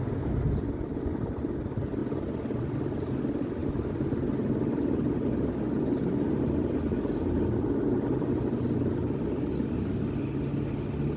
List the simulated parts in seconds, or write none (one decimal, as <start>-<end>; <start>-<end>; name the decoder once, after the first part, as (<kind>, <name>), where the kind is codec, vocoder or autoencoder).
none